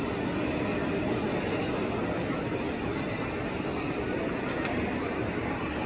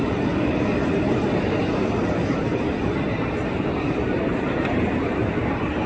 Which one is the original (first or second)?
first